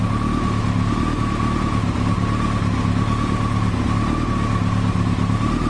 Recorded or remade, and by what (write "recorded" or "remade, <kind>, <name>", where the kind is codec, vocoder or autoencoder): recorded